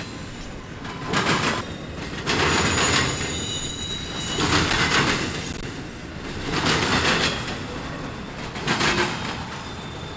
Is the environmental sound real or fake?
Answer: real